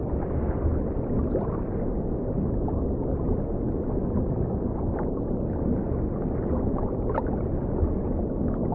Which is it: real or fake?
real